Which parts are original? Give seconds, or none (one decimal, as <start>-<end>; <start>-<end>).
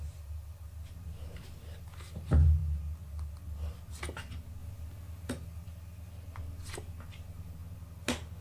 0.0-8.4